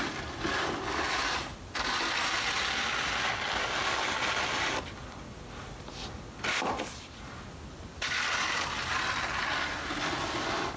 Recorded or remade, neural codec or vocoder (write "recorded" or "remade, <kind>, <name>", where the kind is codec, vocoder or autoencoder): recorded